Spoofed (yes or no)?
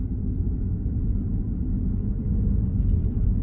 no